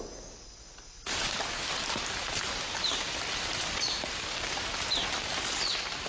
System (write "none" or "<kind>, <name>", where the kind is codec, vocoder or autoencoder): none